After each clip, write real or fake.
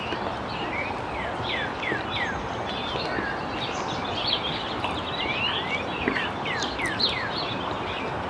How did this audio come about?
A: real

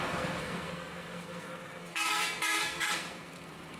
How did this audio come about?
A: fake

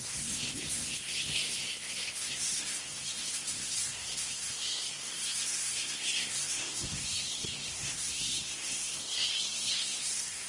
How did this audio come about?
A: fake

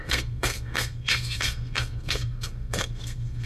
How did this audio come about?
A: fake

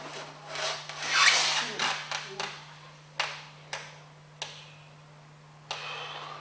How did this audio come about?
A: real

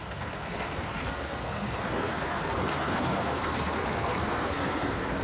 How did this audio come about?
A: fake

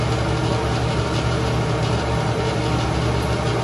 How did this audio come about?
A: real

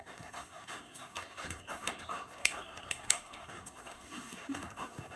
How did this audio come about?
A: fake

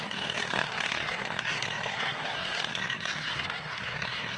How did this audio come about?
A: fake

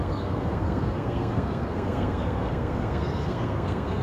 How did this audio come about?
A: fake